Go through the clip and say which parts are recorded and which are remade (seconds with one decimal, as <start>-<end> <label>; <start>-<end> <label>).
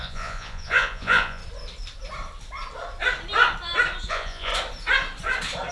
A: 0.0-1.4 remade; 1.4-4.1 recorded; 4.1-4.5 remade; 4.5-5.7 recorded